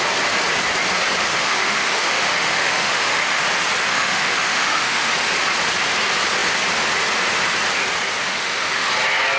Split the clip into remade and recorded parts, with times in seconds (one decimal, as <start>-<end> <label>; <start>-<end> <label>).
0.0-1.3 recorded; 1.3-3.4 remade; 3.4-3.9 recorded; 3.9-5.1 remade; 5.1-8.2 recorded; 8.2-8.9 remade; 8.9-9.4 recorded